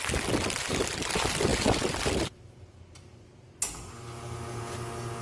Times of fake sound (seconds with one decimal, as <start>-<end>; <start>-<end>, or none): none